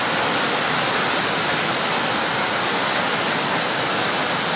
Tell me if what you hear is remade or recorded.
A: recorded